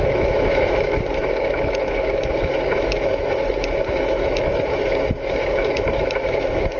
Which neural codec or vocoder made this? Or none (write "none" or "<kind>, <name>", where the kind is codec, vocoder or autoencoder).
autoencoder, DAC-VAE